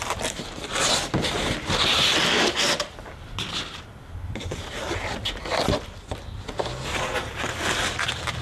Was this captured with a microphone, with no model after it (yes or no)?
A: yes